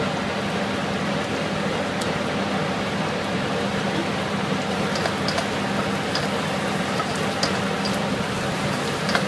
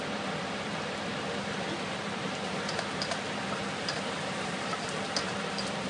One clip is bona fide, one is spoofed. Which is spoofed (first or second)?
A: second